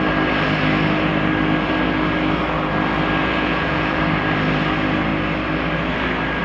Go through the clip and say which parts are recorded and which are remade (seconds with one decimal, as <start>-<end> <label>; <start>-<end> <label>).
0.0-3.2 recorded; 3.2-4.0 remade; 4.0-6.4 recorded